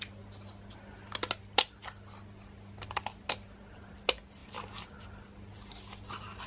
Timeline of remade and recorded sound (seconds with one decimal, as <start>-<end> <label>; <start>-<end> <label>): 0.0-6.5 recorded